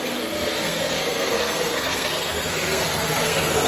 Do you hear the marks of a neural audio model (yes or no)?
yes